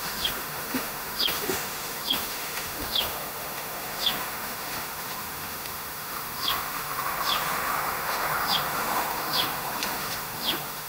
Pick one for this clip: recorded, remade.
remade